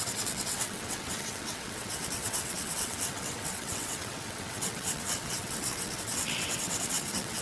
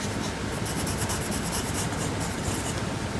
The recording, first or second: second